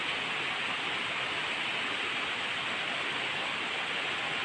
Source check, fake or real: real